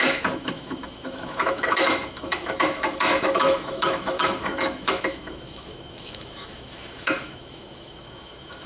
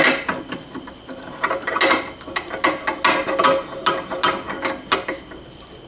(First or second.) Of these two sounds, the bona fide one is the second